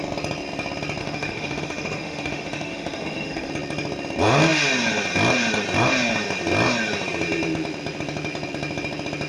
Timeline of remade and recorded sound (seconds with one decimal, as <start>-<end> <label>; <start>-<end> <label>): 0.0-1.0 recorded; 1.0-3.5 remade; 3.5-9.3 recorded